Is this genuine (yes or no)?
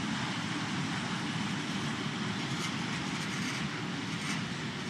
yes